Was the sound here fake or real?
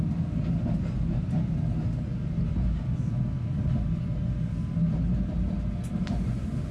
real